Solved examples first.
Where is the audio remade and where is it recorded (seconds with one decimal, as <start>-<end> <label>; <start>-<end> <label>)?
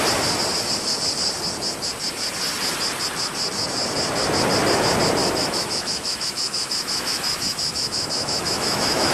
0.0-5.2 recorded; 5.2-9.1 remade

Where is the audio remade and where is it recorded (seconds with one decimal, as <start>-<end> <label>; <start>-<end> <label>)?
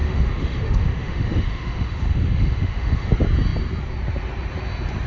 0.0-3.1 remade; 3.1-5.1 recorded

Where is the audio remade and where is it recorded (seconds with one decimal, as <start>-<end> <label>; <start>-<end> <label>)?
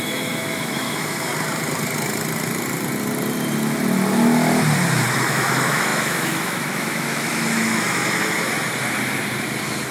0.0-1.3 remade; 1.3-5.1 recorded; 5.1-8.0 remade; 8.0-9.9 recorded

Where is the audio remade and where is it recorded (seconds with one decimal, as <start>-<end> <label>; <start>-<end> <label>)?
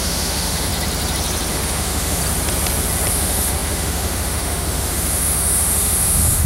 0.0-0.7 remade; 0.7-1.5 recorded; 1.5-2.2 remade; 2.2-3.1 recorded; 3.1-6.5 remade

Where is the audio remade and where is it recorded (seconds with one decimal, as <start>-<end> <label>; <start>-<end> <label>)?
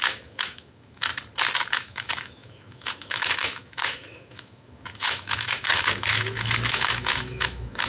0.0-1.1 remade; 1.1-1.7 recorded; 1.7-7.9 remade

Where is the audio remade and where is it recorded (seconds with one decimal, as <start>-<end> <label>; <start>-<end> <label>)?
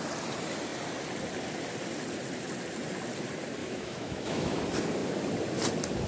0.0-3.6 recorded; 3.6-4.6 remade; 4.6-6.1 recorded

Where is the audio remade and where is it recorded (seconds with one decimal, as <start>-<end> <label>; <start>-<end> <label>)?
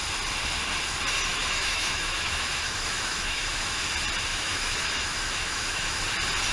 0.0-1.3 recorded; 1.3-3.8 remade; 3.8-4.3 recorded; 4.3-6.0 remade; 6.0-6.5 recorded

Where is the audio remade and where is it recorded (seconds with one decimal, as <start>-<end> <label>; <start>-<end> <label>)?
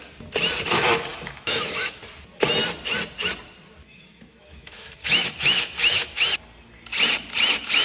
0.0-1.1 recorded; 1.1-2.0 remade; 2.0-3.8 recorded; 3.8-6.2 remade; 6.2-7.8 recorded